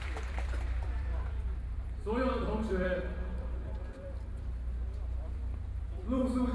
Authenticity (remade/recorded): remade